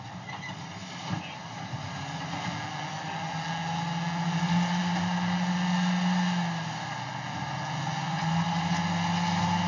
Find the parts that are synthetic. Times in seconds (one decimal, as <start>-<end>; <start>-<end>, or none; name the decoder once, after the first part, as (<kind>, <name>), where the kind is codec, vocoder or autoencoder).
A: none